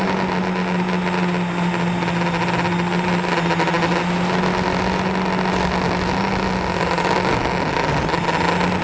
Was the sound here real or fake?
real